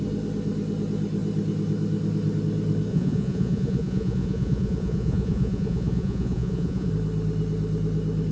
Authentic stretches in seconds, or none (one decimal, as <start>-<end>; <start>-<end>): 0.0-2.9; 6.9-8.3